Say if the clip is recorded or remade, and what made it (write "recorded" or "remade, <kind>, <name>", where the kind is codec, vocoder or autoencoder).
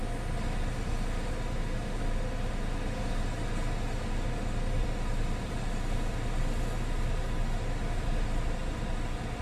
recorded